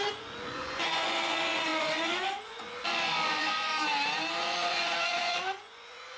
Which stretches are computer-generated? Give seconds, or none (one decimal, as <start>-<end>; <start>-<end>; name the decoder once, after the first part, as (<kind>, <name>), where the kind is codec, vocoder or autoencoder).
0.0-3.7 (vocoder, Vocos); 4.4-6.2